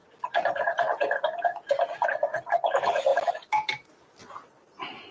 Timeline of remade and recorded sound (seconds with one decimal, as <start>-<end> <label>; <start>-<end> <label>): 0.0-5.1 recorded